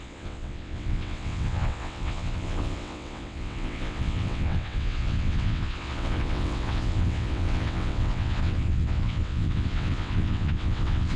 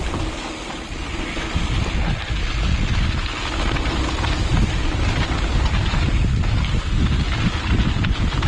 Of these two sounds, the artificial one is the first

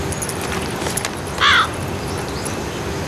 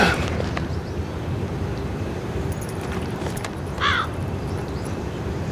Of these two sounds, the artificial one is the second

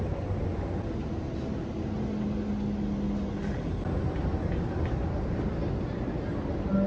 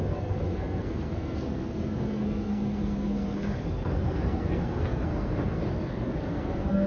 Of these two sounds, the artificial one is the second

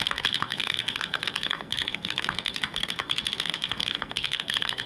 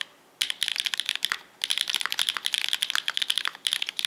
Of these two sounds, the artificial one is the first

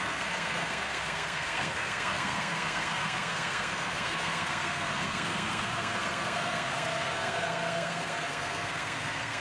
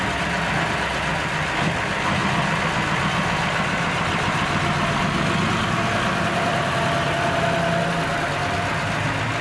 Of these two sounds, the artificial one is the first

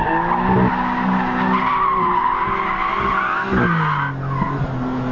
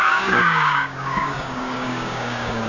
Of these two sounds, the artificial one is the second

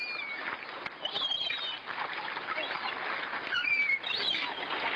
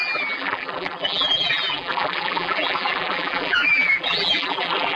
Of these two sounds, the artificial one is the second